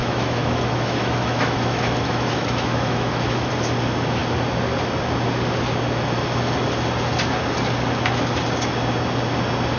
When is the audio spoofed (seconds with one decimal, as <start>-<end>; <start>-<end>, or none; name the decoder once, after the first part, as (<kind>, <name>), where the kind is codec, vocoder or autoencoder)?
0.0-3.5 (autoencoder, DAC-VAE)